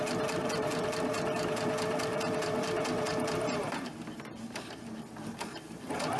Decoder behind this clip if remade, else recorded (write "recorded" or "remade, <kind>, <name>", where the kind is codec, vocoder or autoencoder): remade, vocoder, BigVGAN v2